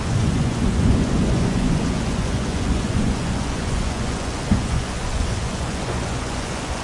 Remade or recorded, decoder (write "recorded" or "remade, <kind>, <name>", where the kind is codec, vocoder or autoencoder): remade, vocoder, Vocos